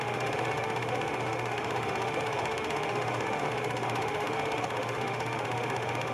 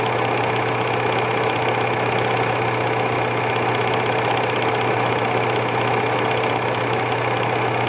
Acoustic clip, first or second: second